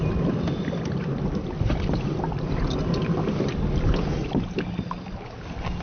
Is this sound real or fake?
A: real